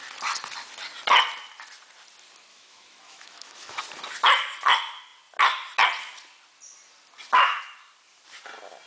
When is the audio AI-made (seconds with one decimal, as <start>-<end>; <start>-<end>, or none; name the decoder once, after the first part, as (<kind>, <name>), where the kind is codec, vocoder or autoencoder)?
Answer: 2.5-3.8 (autoencoder, DAC-VAE)